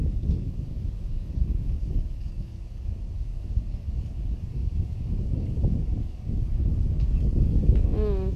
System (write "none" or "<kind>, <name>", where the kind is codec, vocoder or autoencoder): codec, DAC